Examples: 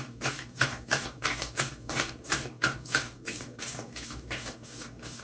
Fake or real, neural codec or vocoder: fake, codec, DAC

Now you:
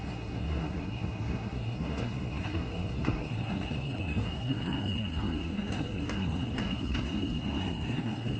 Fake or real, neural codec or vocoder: fake, codec, SNAC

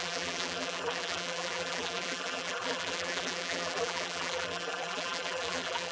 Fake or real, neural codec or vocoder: fake, vocoder, BigVGAN v2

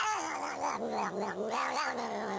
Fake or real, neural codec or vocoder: real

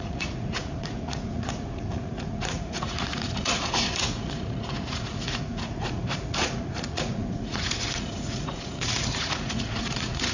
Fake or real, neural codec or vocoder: fake, vocoder, Vocos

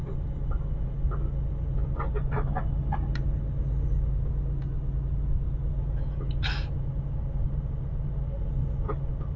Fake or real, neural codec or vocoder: real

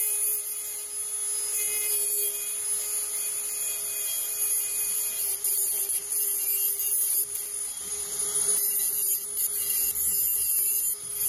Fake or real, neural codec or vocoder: real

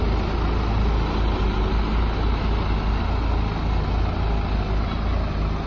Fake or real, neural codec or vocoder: real